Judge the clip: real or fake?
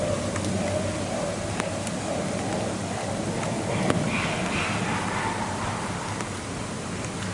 real